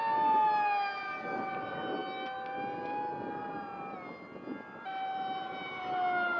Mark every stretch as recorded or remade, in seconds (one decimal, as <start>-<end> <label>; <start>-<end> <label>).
0.0-6.4 recorded